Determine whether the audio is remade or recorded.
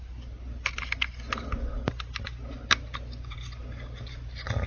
recorded